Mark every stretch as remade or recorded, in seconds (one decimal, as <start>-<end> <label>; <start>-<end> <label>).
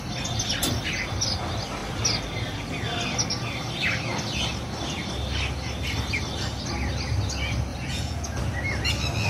0.0-7.7 recorded; 7.7-8.4 remade; 8.4-9.3 recorded